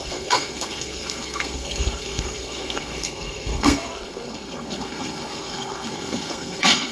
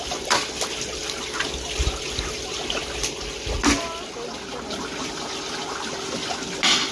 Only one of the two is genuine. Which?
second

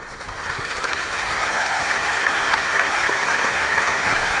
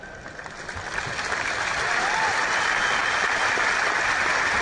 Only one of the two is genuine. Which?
second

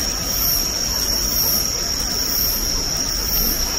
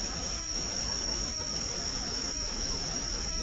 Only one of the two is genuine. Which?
first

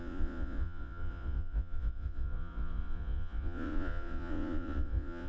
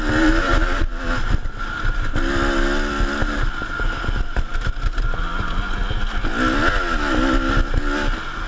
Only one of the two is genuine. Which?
second